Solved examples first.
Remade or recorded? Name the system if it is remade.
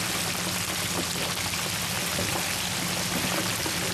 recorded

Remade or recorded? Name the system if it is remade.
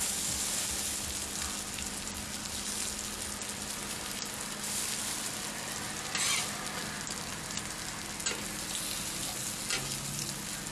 recorded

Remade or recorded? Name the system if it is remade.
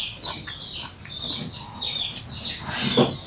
recorded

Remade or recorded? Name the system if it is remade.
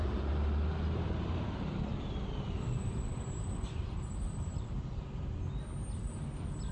remade, vocoder, BigVGAN v2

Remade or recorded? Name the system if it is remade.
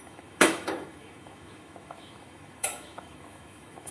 remade, autoencoder, DAC-VAE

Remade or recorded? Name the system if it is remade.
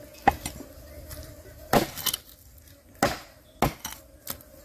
recorded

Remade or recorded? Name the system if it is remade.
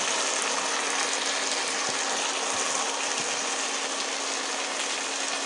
recorded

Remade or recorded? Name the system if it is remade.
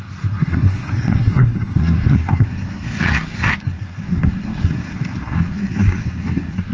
remade, codec, SNAC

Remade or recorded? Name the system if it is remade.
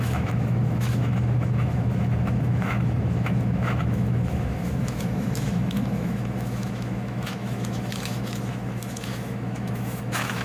remade, autoencoder, DAC-VAE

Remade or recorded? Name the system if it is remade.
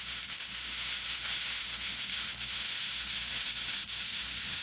remade, autoencoder, DAC-VAE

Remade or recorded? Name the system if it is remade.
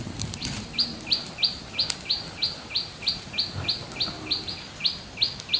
recorded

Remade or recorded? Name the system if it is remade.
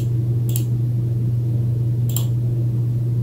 recorded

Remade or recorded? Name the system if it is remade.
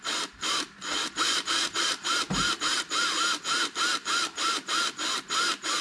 recorded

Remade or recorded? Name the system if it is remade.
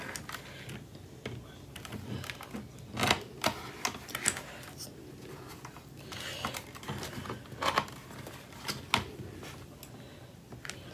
recorded